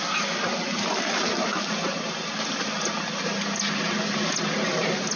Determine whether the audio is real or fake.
real